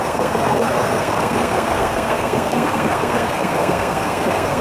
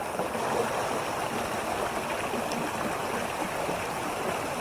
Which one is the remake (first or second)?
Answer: first